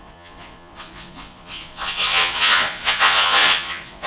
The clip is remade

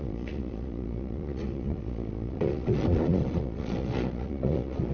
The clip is remade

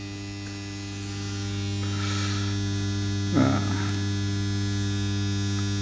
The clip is recorded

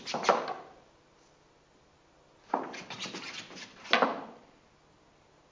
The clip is recorded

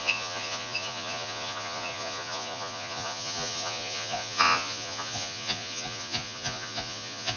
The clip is remade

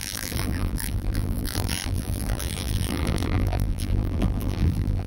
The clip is remade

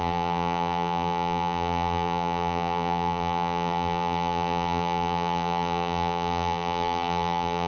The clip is remade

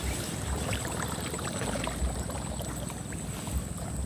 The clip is recorded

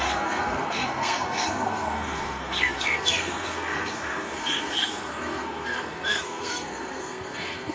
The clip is remade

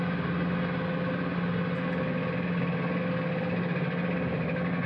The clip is recorded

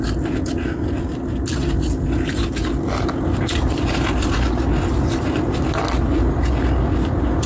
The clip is recorded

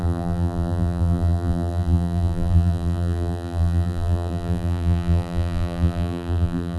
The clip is remade